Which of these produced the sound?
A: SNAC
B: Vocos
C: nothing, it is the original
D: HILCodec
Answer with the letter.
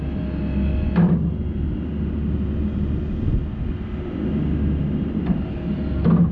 C